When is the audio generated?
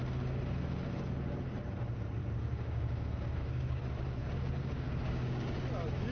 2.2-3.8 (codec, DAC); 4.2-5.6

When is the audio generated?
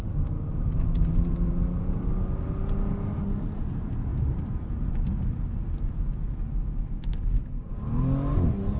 none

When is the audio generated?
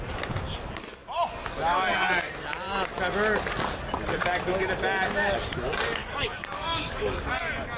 6.0-7.3 (codec, DAC)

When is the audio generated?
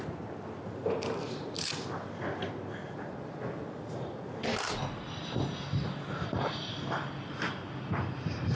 none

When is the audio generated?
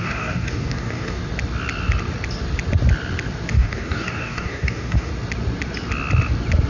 0.0-1.2 (codec, DAC); 3.5-5.1